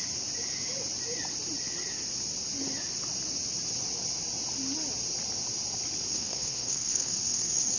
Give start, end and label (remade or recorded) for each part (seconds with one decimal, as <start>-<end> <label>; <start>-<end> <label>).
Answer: 0.0-6.1 recorded; 6.1-7.8 remade